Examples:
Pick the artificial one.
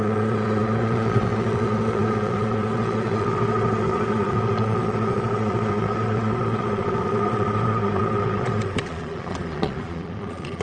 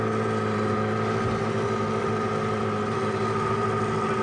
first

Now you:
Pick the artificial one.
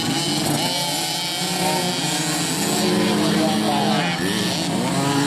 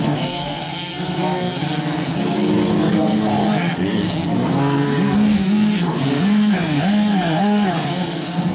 second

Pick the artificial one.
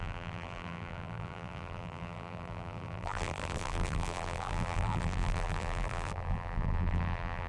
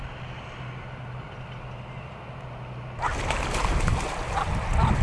first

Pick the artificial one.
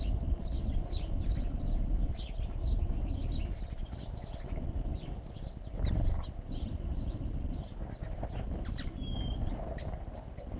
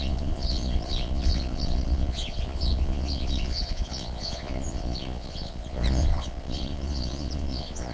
second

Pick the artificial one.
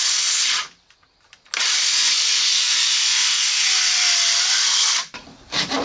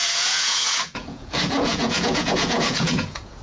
second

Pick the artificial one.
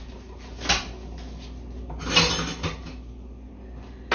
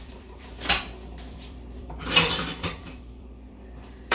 second